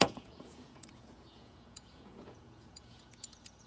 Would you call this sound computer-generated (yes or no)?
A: yes